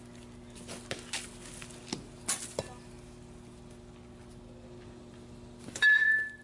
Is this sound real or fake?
real